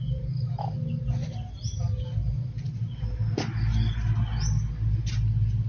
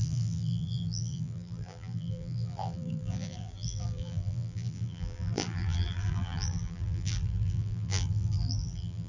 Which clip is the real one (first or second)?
first